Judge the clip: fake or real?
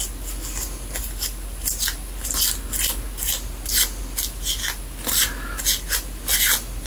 real